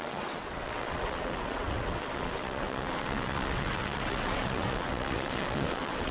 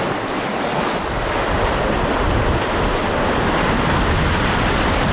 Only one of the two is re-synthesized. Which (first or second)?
first